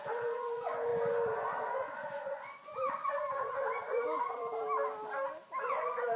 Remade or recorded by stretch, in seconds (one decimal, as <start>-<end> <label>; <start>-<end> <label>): 0.0-4.4 remade; 4.4-5.7 recorded; 5.7-6.2 remade